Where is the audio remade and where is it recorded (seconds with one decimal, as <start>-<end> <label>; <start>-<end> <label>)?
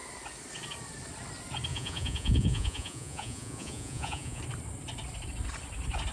0.0-1.7 recorded; 1.7-4.4 remade; 4.4-6.1 recorded